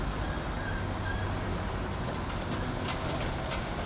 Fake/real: real